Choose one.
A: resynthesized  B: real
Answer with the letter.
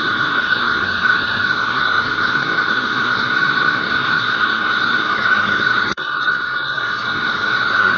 A